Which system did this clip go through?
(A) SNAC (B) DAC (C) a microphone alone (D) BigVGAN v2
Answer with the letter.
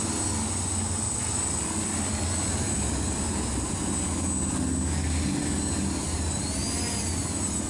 C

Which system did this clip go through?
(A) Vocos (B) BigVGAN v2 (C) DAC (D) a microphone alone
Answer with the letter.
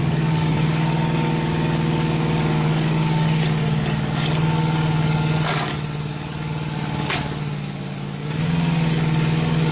C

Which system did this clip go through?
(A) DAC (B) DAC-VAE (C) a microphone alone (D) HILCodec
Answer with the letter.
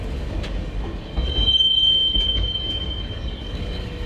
A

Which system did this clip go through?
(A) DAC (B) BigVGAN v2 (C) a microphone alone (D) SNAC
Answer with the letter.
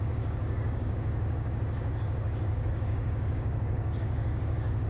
A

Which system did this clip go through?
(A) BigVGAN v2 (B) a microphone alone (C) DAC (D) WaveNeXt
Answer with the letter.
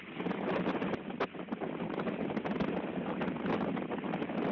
B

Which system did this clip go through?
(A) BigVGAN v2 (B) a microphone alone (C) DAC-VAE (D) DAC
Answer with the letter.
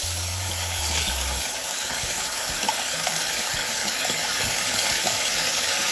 D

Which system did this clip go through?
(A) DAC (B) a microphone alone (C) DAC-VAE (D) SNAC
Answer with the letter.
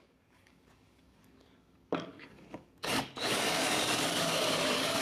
A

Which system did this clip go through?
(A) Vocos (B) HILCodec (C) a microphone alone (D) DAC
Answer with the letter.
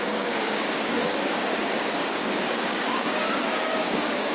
D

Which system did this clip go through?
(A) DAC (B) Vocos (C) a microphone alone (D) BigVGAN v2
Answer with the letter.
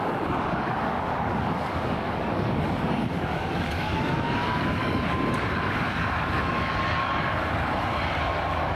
A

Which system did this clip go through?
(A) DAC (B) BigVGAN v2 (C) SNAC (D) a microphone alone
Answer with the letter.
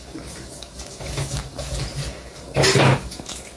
A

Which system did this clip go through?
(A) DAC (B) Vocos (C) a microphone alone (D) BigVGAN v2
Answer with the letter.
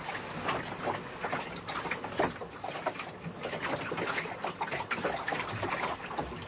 C